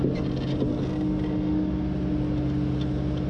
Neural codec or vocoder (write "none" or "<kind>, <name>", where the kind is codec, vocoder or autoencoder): none